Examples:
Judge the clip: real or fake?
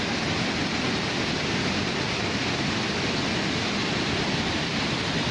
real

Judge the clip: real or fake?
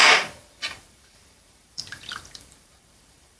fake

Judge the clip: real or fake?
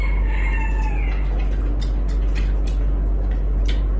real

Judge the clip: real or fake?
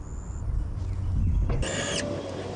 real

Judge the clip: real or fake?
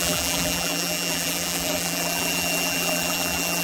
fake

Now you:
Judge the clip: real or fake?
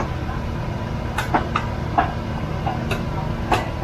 real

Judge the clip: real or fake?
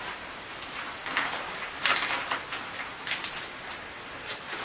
fake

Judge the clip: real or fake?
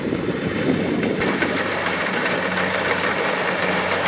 fake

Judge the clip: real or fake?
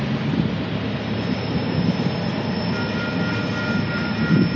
real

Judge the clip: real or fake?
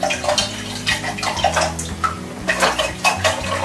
real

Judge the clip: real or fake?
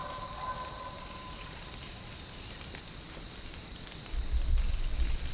fake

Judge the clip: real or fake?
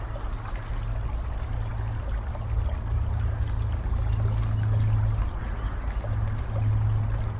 real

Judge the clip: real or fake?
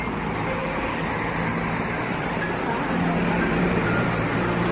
fake